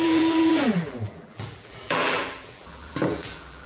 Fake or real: fake